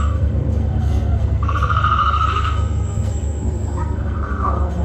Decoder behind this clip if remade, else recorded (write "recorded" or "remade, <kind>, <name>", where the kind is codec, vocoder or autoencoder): remade, codec, SNAC